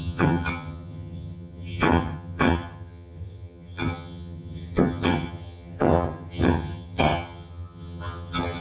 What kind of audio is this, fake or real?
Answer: fake